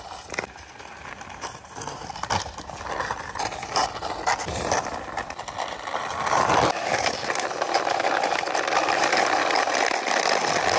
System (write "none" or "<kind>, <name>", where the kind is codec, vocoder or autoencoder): vocoder, BigVGAN v2